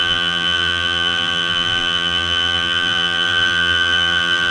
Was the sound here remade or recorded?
remade